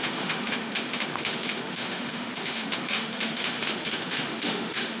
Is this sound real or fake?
fake